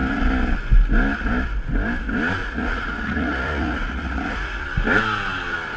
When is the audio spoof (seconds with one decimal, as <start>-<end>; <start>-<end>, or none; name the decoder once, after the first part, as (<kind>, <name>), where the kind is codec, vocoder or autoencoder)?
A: 2.4-4.6 (vocoder, Vocos)